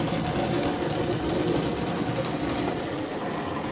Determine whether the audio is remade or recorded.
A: recorded